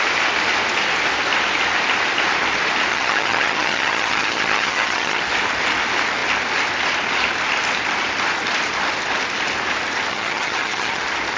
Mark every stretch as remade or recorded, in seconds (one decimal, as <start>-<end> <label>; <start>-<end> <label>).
0.0-2.9 recorded; 2.9-5.2 remade; 5.2-10.1 recorded; 10.1-11.0 remade; 11.0-11.4 recorded